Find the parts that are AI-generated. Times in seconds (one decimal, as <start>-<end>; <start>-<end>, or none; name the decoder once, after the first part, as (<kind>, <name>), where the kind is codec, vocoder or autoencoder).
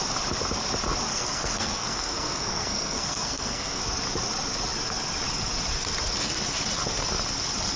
1.1-3.8 (codec, SNAC)